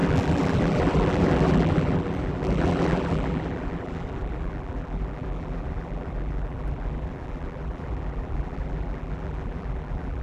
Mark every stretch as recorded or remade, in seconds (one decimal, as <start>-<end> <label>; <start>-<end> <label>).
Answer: 0.0-10.2 remade